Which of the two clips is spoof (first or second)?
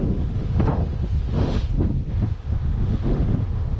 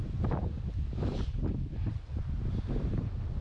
first